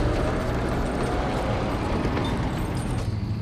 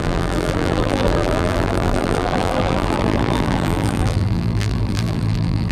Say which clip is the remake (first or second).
second